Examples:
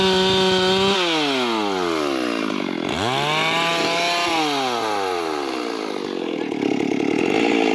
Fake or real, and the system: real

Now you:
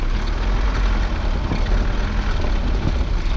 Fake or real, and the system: real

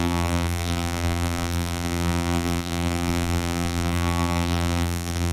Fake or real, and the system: fake, vocoder, BigVGAN v2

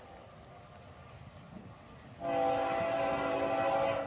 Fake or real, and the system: real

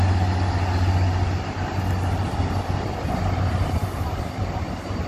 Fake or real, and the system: real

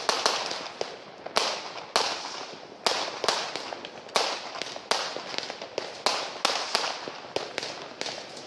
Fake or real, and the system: real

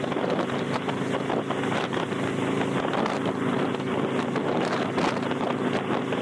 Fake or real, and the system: real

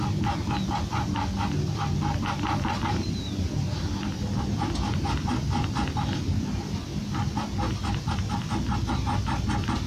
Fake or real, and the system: real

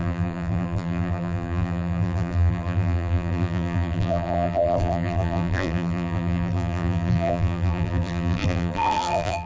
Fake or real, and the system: fake, vocoder, BigVGAN v2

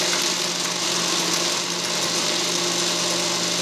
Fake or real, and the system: real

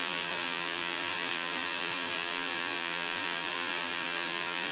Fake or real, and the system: fake, vocoder, BigVGAN v2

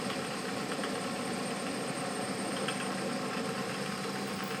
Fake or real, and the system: fake, vocoder, BigVGAN v2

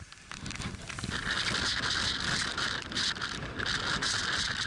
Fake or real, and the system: real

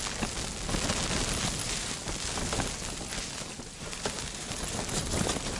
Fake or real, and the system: real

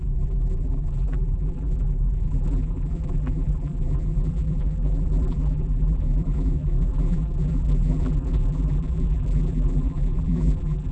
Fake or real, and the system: fake, vocoder, BigVGAN v2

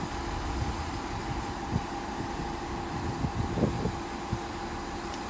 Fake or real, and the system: real